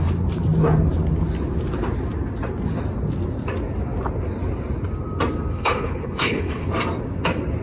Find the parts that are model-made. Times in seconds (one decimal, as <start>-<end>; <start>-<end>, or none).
5.5-6.7